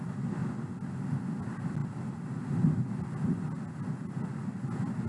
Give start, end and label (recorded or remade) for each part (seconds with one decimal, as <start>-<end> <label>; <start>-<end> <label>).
0.0-5.1 recorded